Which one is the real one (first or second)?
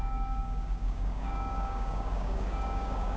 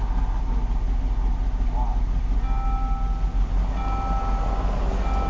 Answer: second